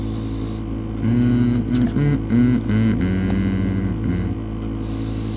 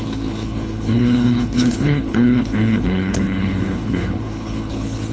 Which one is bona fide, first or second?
first